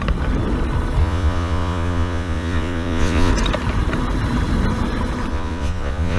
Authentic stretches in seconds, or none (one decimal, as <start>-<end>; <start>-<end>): 0.0-1.0; 3.3-5.3